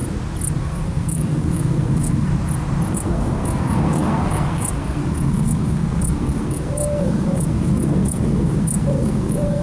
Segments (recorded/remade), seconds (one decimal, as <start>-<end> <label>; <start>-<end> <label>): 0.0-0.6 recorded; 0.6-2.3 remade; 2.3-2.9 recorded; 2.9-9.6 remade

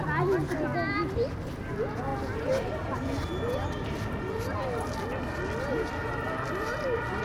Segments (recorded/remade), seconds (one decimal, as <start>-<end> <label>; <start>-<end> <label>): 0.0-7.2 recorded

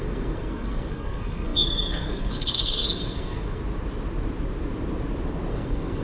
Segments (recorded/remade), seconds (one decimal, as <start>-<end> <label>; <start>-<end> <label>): 0.0-3.6 remade; 3.6-5.5 recorded; 5.5-6.0 remade